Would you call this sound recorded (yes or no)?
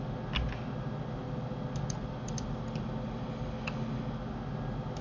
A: yes